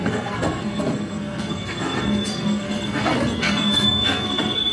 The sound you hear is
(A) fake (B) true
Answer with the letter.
A